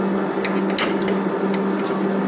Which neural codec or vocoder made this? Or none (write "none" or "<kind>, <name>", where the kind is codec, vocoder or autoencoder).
none